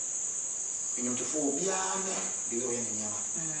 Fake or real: real